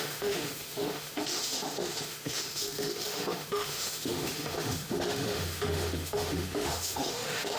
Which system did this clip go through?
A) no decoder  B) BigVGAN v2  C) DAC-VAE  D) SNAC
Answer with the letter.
C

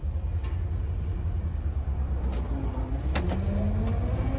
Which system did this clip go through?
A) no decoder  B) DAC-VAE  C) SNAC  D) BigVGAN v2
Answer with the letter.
A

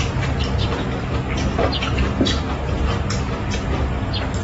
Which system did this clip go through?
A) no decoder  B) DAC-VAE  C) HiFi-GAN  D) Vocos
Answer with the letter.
A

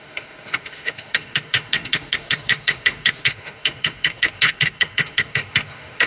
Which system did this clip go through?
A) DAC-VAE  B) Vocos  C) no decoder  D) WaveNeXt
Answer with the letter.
A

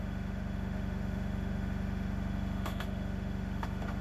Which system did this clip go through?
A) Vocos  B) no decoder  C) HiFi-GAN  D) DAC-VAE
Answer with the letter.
D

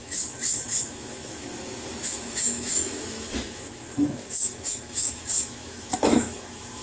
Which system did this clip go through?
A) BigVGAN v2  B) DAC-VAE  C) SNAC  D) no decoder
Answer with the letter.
B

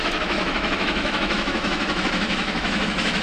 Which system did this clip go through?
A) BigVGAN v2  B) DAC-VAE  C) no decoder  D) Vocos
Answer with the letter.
B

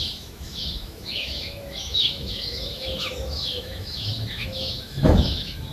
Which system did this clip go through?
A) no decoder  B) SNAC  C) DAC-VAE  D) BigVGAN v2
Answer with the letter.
C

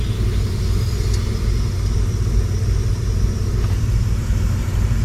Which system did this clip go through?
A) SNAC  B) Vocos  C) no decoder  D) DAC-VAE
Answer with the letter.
C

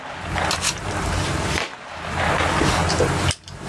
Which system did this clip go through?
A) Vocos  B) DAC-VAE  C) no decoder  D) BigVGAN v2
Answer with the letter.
C